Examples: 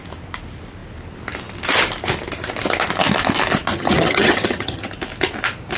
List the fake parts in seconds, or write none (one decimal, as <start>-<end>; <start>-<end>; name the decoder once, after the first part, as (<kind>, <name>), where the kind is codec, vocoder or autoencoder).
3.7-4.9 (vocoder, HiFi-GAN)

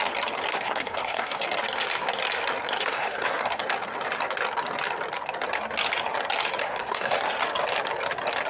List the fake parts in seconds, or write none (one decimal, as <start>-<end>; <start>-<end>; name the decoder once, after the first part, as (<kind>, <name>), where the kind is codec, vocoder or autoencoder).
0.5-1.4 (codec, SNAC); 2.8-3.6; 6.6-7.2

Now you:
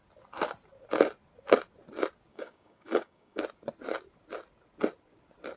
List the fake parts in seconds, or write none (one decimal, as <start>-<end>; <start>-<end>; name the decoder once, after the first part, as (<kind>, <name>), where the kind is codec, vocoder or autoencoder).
2.3-3.4 (codec, DAC)